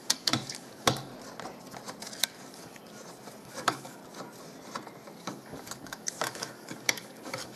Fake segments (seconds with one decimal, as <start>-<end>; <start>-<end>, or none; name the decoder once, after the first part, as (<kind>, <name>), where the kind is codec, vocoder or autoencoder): 0.0-1.1 (codec, DAC); 2.2-2.8; 3.4-4.0; 5.2-7.6